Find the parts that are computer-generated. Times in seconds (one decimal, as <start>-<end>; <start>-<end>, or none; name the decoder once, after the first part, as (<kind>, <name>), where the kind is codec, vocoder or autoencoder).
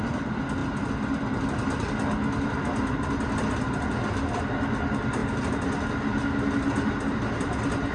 none